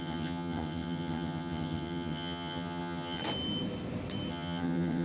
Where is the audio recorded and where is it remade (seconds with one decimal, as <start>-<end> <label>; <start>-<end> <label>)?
0.0-3.2 remade; 3.2-4.3 recorded; 4.3-5.0 remade